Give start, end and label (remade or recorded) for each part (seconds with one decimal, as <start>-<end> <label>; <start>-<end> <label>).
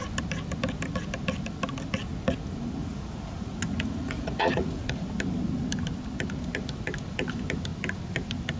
0.0-2.8 recorded; 2.8-5.1 remade; 5.1-8.6 recorded